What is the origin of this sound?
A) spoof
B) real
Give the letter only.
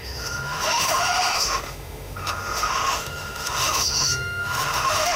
A